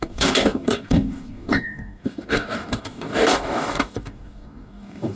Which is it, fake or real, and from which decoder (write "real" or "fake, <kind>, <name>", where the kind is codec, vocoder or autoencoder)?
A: fake, codec, DAC